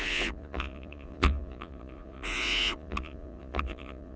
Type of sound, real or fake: fake